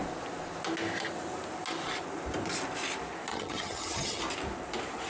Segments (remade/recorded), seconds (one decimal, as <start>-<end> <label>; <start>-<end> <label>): 0.0-3.3 recorded; 3.3-4.2 remade; 4.2-5.1 recorded